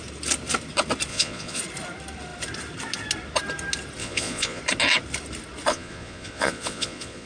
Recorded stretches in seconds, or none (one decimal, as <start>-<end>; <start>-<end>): 0.0-1.1; 1.6-4.0; 4.6-5.7